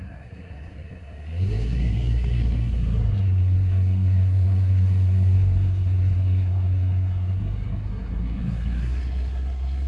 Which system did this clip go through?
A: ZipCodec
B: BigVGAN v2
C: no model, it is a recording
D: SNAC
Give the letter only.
D